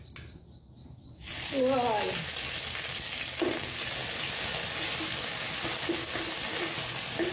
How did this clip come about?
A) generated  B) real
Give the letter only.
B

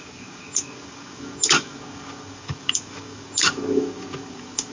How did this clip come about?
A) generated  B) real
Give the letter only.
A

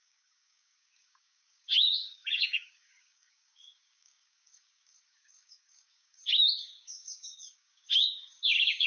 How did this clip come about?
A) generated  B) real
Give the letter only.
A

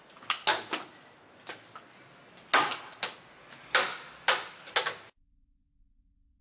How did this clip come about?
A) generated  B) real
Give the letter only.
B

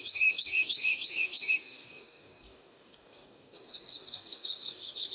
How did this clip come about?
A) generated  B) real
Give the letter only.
A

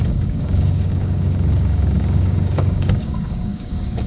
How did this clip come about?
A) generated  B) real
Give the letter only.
A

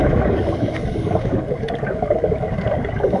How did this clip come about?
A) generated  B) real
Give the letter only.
A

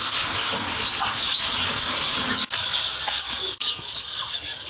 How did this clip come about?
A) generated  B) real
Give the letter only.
A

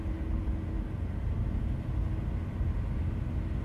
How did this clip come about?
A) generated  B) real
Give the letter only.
B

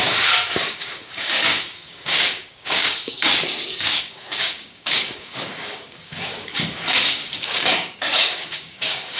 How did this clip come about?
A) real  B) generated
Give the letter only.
B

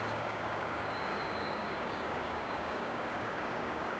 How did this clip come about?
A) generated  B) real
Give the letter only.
A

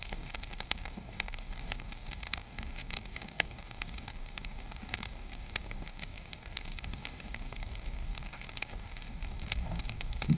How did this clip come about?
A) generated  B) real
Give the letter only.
A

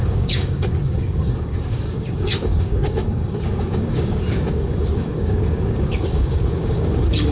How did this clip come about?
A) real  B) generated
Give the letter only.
B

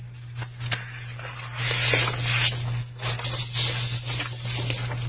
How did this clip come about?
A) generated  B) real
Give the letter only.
B